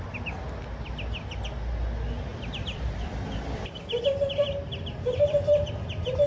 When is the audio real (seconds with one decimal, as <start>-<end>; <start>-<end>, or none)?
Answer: 0.0-2.3; 5.7-6.3